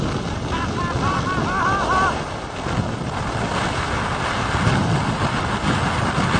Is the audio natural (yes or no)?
yes